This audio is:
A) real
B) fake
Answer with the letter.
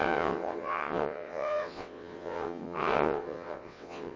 B